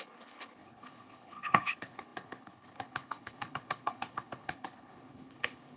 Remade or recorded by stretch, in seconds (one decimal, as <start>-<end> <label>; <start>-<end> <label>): 0.0-5.8 remade

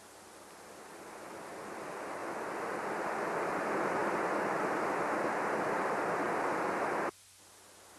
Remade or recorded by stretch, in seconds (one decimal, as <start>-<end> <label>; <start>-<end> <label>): 0.0-8.0 recorded

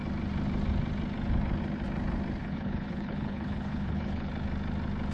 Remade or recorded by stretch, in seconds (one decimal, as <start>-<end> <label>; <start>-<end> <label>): 0.0-2.4 recorded; 2.4-4.3 remade; 4.3-5.1 recorded

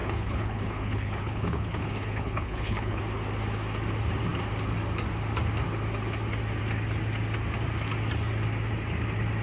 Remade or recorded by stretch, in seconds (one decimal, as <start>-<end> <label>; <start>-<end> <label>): 0.0-3.0 remade; 3.0-9.4 recorded